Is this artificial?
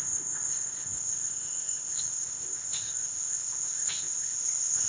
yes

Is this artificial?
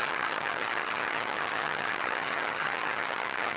yes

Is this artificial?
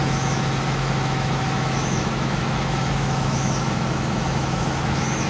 yes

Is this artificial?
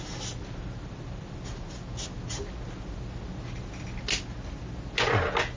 no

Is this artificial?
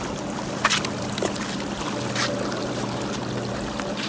no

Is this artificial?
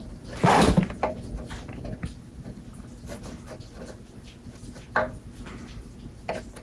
no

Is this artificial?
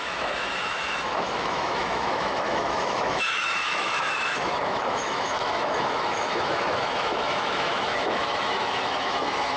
yes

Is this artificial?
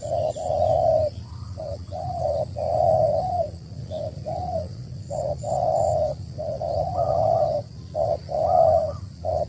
yes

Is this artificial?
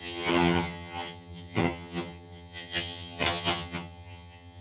yes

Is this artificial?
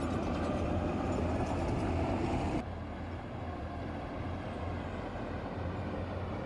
yes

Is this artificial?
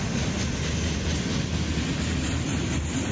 no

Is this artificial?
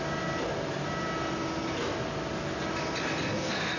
no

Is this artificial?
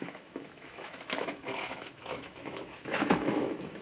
yes